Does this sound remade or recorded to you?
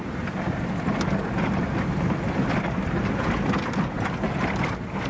recorded